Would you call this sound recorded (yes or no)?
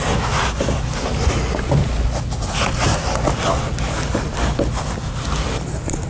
yes